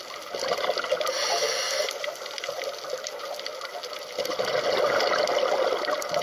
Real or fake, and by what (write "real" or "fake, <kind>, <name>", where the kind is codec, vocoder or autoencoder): real